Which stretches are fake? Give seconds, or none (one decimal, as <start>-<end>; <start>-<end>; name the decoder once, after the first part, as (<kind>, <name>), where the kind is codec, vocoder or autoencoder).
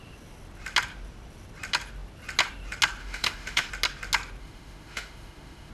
3.0-3.7 (autoencoder, DAC-VAE); 4.4-5.7